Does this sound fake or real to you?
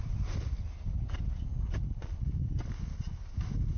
real